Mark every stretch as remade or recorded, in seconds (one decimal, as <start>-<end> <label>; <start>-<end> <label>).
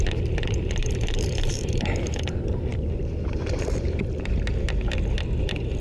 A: 0.0-0.8 recorded; 0.8-4.0 remade; 4.0-5.8 recorded